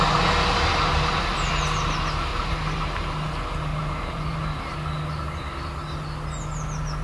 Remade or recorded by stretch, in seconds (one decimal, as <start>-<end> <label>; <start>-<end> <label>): 0.0-0.7 recorded; 0.7-1.2 remade; 1.2-2.3 recorded; 2.3-3.3 remade; 3.3-3.7 recorded; 3.7-4.6 remade; 4.6-7.0 recorded